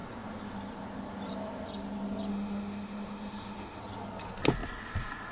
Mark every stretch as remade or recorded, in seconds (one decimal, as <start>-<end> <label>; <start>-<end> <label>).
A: 0.0-2.3 recorded; 2.3-3.8 remade; 3.8-5.3 recorded